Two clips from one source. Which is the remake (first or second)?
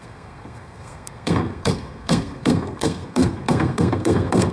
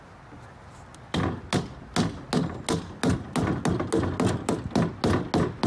first